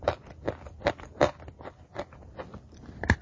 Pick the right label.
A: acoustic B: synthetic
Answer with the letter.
A